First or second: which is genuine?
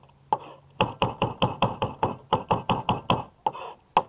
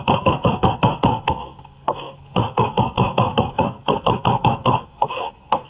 first